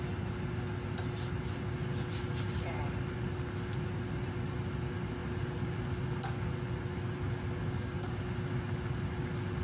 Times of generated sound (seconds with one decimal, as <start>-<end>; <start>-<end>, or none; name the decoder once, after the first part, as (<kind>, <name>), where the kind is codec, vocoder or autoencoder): 7.6-8.2 (codec, DAC)